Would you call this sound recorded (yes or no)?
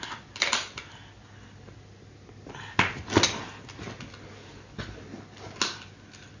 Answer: yes